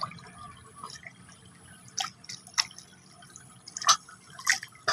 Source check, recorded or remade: recorded